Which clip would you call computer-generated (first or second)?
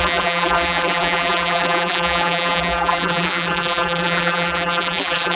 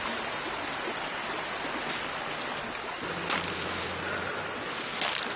first